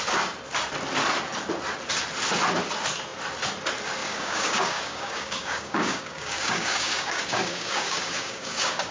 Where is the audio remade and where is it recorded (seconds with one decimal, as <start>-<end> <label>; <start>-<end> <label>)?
0.0-4.0 recorded; 4.0-8.9 remade